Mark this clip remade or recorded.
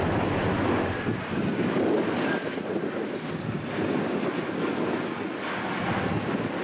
recorded